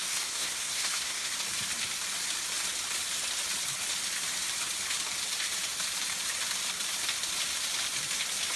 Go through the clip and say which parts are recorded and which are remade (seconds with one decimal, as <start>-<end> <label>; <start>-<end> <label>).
0.0-1.3 remade; 1.3-8.6 recorded